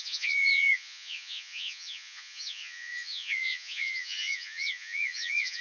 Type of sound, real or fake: fake